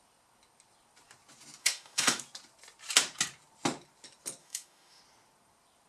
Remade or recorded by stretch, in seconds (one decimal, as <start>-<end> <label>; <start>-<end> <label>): 0.0-1.6 recorded; 1.6-2.2 remade; 2.2-4.4 recorded; 4.4-5.0 remade; 5.0-5.9 recorded